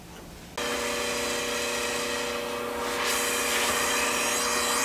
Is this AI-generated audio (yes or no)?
no